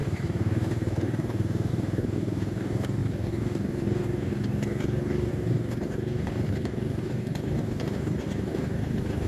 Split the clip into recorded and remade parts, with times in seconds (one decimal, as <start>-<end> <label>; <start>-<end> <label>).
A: 0.0-9.3 remade